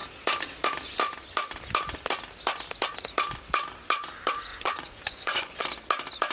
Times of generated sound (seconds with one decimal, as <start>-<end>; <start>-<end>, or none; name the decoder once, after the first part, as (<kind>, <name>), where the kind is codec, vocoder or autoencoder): 4.5-5.6 (vocoder, Vocos)